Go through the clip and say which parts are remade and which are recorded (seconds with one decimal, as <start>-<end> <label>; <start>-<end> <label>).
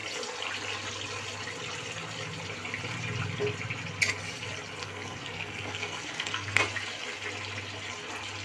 0.0-4.8 recorded; 4.8-6.6 remade; 6.6-8.4 recorded